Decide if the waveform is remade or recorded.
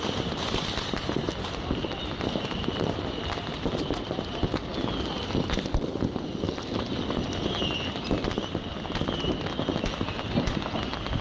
recorded